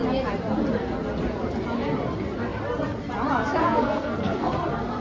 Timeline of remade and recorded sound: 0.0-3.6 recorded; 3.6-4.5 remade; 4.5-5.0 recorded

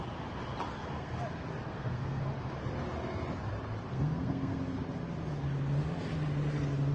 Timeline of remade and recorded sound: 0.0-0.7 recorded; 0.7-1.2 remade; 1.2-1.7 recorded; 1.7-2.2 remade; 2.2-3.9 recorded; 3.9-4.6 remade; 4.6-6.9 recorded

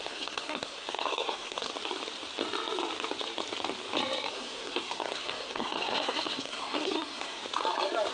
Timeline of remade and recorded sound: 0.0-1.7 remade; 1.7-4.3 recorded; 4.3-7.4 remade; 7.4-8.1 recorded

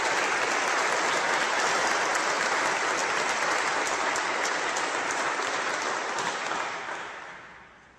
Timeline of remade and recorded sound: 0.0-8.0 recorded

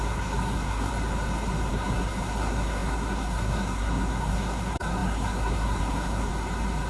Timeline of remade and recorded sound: 0.0-0.9 remade; 0.9-1.7 recorded; 1.7-6.3 remade; 6.3-6.9 recorded